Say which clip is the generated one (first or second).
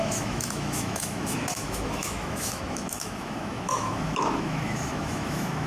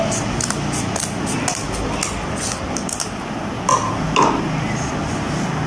first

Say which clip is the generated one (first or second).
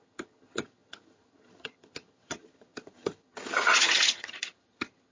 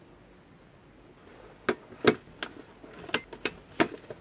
first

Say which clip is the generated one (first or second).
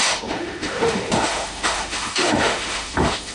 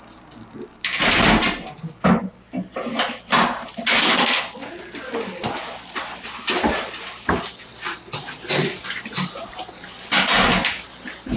first